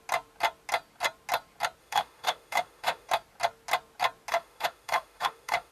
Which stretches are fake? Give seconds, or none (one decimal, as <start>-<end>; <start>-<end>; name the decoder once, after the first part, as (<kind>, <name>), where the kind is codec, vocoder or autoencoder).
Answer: 1.8-3.1 (autoencoder, DAC-VAE); 4.3-5.7